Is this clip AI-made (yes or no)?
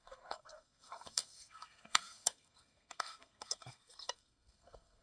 yes